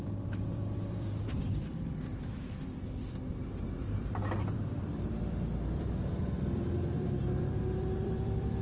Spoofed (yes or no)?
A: yes